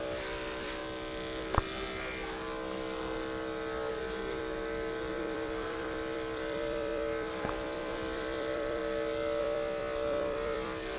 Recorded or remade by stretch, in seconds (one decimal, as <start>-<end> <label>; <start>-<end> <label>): 0.0-0.8 remade; 0.8-3.9 recorded; 3.9-4.4 remade; 4.4-5.1 recorded; 5.1-8.8 remade; 8.8-9.4 recorded; 9.4-11.0 remade